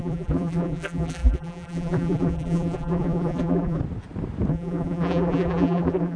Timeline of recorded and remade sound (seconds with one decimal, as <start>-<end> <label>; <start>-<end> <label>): 0.0-3.8 remade; 3.8-4.5 recorded; 4.5-6.2 remade